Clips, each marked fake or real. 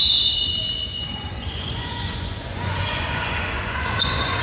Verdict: fake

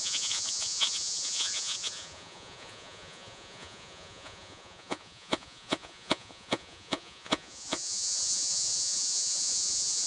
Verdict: fake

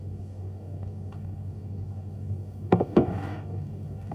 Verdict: fake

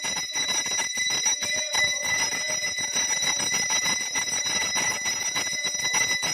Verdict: real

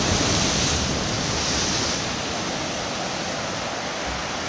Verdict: real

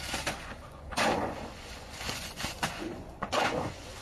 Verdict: fake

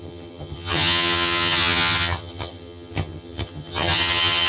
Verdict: fake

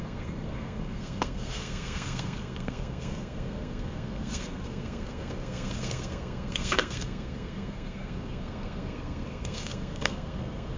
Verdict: fake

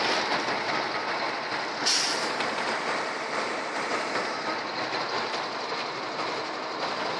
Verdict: real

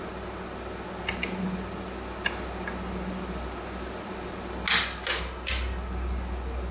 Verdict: real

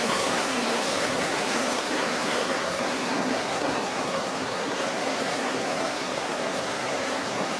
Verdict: fake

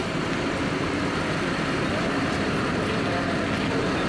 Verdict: real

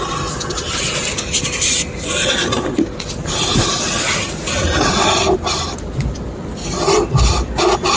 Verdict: real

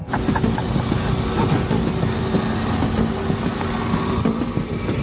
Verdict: real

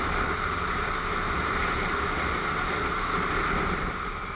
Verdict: real